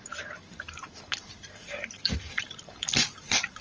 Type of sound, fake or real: fake